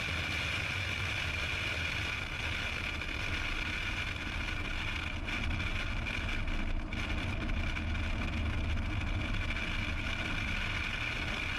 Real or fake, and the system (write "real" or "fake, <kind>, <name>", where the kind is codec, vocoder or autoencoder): real